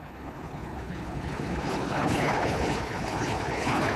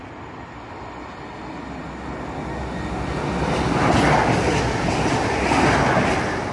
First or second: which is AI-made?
first